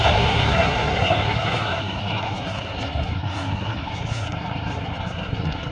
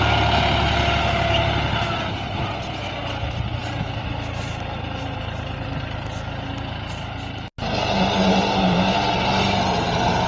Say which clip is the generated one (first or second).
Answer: first